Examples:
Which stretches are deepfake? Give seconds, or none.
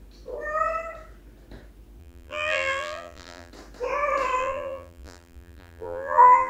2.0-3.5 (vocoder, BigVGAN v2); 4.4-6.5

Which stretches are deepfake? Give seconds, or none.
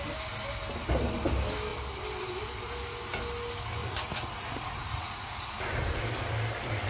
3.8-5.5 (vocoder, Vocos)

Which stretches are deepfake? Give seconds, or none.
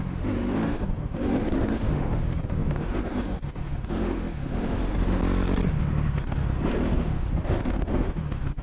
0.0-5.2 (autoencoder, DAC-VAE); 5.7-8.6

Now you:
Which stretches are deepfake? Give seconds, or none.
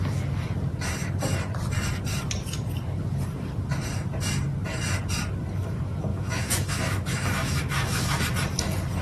6.1-8.2 (autoencoder, DAC-VAE)